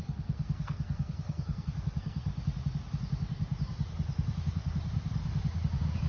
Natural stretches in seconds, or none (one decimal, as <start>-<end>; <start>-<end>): 2.3-6.1